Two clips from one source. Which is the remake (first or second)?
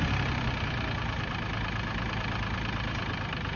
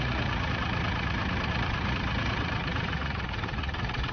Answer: second